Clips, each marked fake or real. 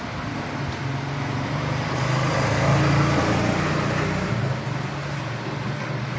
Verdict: real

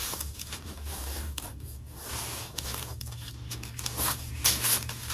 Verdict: fake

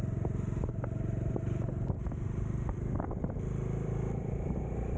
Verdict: fake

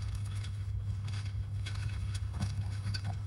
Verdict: fake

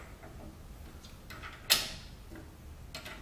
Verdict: real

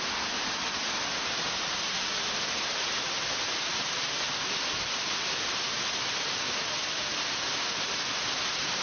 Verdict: real